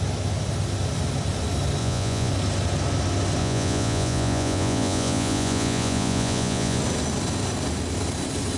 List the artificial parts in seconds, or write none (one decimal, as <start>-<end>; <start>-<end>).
1.8-2.3; 3.4-6.8